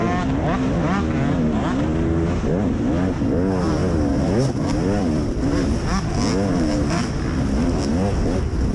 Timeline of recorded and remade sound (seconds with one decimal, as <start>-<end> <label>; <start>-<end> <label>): 0.0-3.8 recorded; 3.8-6.1 remade; 6.1-8.7 recorded

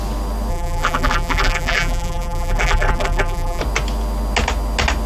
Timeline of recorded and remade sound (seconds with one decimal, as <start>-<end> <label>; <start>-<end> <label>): 0.0-0.5 recorded; 0.5-3.6 remade; 3.6-5.1 recorded

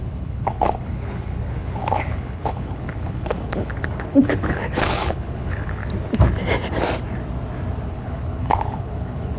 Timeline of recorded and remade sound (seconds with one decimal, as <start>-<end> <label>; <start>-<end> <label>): 0.0-5.8 remade; 5.8-7.9 recorded; 7.9-9.4 remade